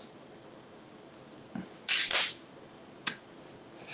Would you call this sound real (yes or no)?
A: yes